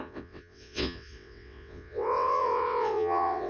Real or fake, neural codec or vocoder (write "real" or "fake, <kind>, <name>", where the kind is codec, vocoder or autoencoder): fake, vocoder, WaveNeXt